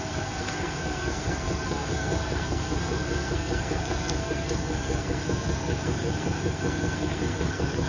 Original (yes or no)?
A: no